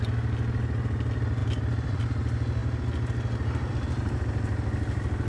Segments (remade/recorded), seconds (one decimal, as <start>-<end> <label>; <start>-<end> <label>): 0.0-1.4 recorded; 1.4-2.0 remade; 2.0-5.3 recorded